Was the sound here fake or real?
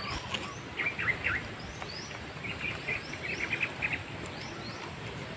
real